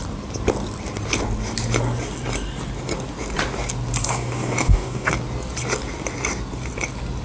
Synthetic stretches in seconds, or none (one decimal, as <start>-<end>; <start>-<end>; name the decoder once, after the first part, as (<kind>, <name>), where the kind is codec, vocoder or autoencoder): 4.0-5.1 (codec, DAC)

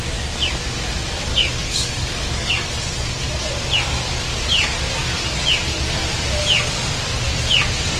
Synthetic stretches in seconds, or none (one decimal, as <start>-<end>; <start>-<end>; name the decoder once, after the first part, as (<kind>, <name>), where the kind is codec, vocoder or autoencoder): 1.3-2.5 (codec, DAC)

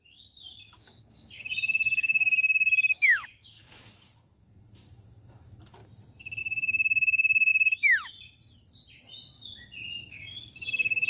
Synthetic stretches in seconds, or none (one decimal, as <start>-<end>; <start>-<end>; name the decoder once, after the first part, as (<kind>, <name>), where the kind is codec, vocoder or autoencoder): 0.0-5.8 (codec, DAC); 6.4-7.5; 10.1-11.1